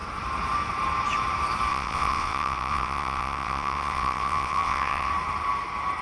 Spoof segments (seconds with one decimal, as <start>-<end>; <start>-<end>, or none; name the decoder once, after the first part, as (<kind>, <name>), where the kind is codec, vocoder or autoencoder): 1.7-5.1 (vocoder, WaveNeXt)